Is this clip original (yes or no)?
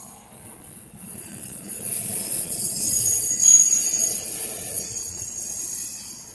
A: no